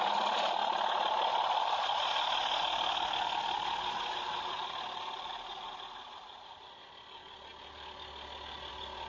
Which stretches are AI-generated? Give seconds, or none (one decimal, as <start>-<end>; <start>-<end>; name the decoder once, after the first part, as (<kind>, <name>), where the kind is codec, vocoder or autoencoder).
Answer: none